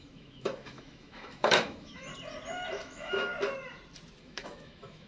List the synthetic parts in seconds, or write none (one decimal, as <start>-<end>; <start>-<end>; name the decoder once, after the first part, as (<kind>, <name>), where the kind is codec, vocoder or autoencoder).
0.0-2.1 (autoencoder, DAC-VAE); 2.7-3.3; 4.2-5.1